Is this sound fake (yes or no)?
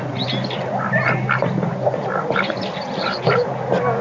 no